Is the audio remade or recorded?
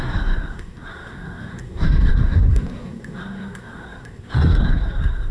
remade